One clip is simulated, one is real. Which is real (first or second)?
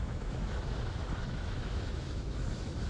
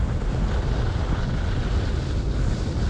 second